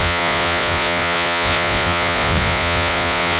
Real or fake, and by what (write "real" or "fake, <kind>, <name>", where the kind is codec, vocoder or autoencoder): fake, vocoder, Vocos